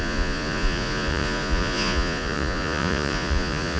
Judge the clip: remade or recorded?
remade